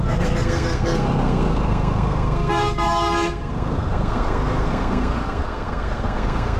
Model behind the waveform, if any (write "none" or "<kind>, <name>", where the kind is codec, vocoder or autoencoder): codec, SNAC